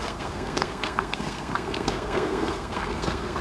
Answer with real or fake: fake